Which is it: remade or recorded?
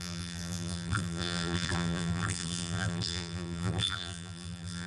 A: remade